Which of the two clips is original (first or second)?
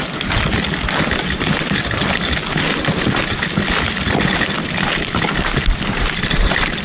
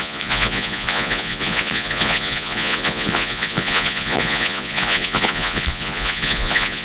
first